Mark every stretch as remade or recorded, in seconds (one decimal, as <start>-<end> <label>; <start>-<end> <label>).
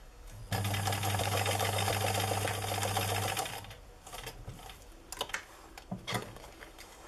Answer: 0.0-0.4 remade; 0.4-1.2 recorded; 1.2-1.9 remade; 1.9-6.1 recorded; 6.1-7.1 remade